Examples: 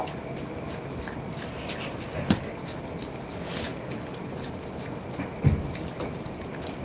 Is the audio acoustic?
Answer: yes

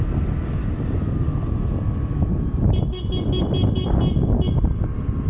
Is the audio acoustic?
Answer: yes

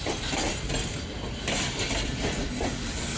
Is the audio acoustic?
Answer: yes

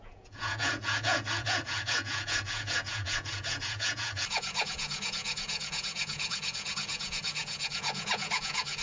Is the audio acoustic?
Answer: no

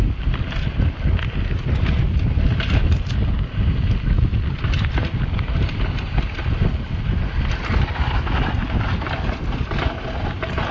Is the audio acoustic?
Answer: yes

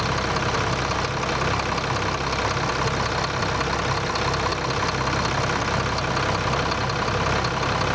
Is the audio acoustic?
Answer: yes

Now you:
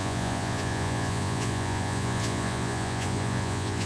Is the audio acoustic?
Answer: no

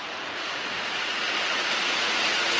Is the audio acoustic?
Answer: no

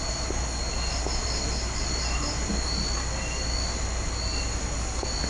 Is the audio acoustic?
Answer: yes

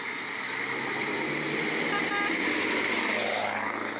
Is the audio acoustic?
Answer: yes